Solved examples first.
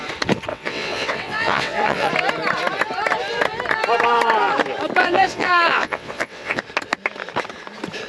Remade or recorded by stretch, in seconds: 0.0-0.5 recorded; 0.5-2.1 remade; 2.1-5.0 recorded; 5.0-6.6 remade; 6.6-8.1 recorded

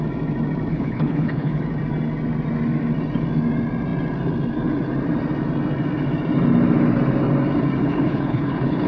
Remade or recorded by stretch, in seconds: 0.0-0.7 recorded; 0.7-1.6 remade; 1.6-7.8 recorded; 7.8-8.9 remade